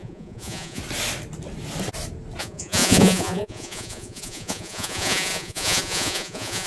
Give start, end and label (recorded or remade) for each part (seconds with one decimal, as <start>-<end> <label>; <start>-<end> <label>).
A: 0.0-0.8 remade; 0.8-2.4 recorded; 2.4-6.7 remade